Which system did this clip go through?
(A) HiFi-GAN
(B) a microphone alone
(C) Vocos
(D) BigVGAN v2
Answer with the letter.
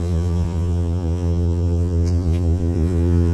C